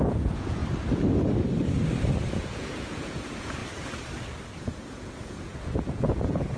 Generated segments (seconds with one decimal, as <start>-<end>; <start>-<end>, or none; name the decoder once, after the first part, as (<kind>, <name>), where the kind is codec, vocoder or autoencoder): 0.0-0.6 (vocoder, Vocos); 2.4-3.6; 4.6-6.6